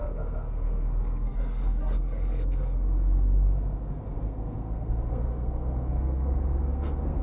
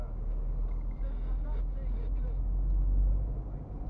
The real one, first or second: second